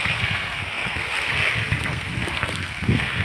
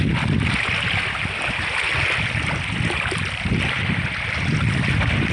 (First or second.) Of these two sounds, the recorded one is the second